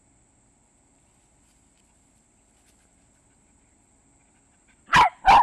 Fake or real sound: real